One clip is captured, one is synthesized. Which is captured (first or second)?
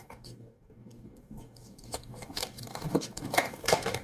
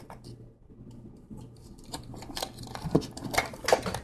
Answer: second